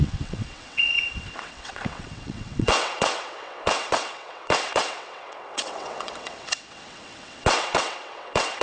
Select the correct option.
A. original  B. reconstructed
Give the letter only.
B